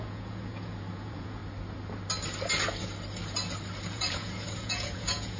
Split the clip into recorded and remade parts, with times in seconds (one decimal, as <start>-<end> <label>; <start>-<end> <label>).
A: 0.0-1.4 remade; 1.4-3.9 recorded; 3.9-5.4 remade